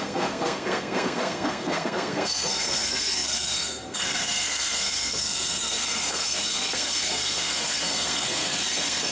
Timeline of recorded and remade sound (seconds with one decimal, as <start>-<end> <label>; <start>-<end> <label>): 0.0-9.1 remade